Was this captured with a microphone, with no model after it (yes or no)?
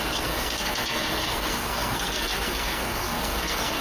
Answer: no